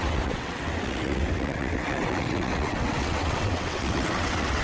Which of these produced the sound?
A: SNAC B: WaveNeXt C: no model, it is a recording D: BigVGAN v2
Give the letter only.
B